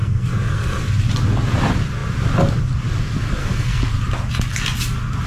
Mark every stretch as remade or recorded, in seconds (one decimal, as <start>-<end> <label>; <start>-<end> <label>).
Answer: 0.0-0.9 remade; 0.9-3.4 recorded; 3.4-3.9 remade; 3.9-5.3 recorded